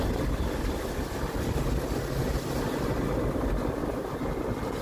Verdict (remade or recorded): recorded